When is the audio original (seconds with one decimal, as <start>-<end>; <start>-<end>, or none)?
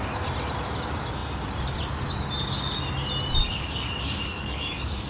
0.0-3.4